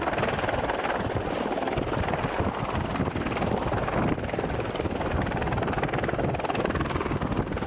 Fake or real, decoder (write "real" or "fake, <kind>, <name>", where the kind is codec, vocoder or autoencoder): real